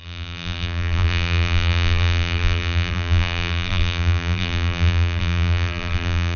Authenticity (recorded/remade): remade